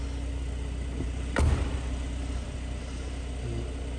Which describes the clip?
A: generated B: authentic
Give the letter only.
B